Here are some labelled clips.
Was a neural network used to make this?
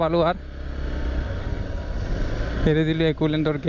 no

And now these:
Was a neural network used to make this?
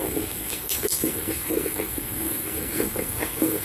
yes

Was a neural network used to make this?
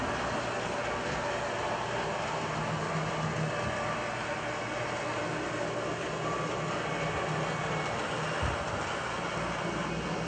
no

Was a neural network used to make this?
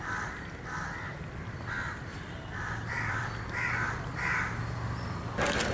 no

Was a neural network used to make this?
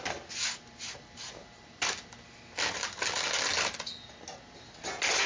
no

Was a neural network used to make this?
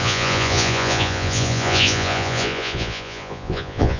yes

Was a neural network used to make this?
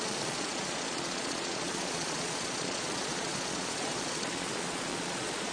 yes